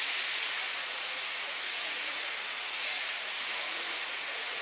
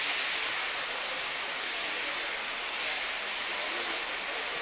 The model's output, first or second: first